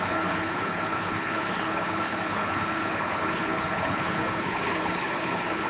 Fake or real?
fake